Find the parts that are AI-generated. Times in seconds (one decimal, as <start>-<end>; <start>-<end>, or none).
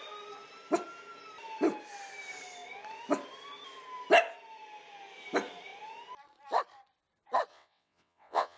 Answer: 7.5-8.6